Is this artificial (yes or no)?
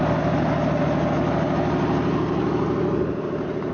no